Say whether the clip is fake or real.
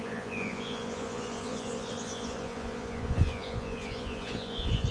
fake